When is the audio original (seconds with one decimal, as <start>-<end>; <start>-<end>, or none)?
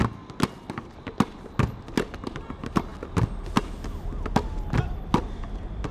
0.0-5.9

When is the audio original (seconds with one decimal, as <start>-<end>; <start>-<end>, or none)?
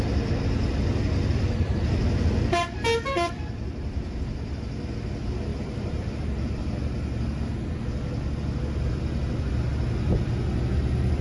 0.0-5.5; 6.6-11.2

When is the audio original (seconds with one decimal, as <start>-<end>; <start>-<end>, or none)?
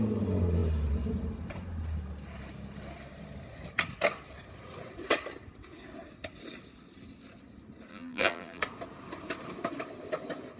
0.0-7.9; 8.6-10.6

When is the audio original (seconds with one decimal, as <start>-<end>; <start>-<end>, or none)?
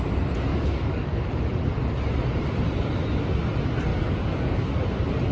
0.0-0.5; 1.3-3.9; 4.8-5.3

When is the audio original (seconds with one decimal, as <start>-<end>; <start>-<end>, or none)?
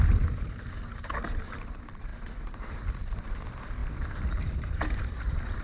0.0-2.1; 2.6-3.8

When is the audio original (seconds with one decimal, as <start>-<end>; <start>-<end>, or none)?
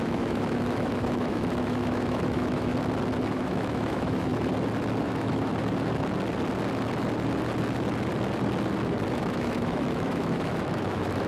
2.7-3.3; 4.3-5.0; 5.5-9.1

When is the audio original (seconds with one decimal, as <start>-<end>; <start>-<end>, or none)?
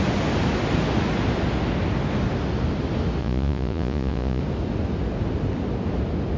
0.0-3.2; 4.4-6.4